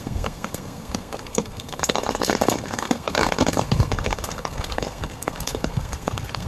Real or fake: fake